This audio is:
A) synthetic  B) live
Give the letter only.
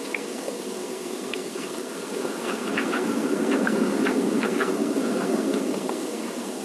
A